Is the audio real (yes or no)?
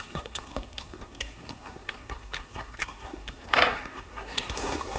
no